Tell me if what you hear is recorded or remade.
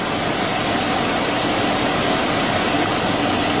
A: recorded